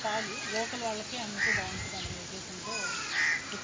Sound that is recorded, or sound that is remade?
recorded